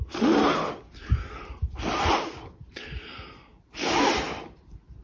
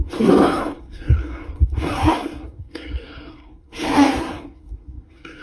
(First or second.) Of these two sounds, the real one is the first